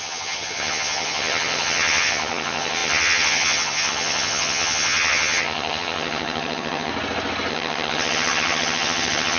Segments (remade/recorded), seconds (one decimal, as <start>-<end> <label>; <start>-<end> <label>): 0.0-6.9 remade; 6.9-7.5 recorded; 7.5-9.4 remade